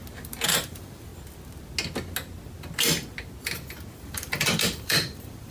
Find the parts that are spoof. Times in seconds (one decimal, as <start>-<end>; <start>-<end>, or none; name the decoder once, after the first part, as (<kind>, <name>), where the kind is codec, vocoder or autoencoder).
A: 0.6-1.1 (vocoder, BigVGAN v2); 4.0-5.5